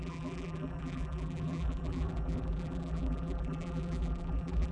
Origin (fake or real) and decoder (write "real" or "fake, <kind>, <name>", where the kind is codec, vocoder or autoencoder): fake, vocoder, BigVGAN v2